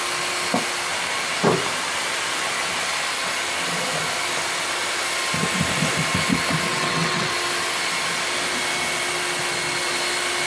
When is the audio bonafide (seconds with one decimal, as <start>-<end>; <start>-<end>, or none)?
0.0-6.7; 7.3-10.5